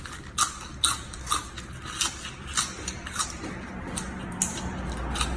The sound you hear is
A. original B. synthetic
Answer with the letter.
A